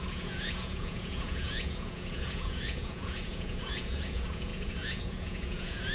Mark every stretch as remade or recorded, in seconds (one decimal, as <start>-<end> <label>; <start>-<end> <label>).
0.0-5.9 remade